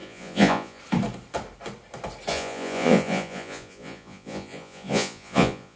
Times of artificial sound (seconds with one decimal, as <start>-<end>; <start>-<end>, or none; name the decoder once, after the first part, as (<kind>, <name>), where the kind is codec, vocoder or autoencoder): 0.0-0.8 (vocoder, Vocos); 2.3-5.8